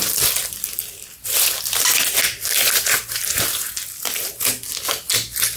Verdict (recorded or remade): recorded